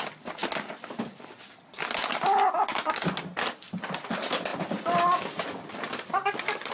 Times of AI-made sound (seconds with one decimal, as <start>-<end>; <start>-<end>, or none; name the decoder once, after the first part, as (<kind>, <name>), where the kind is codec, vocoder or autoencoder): 0.0-0.4 (vocoder, BigVGAN v2); 4.1-4.5; 5.7-6.7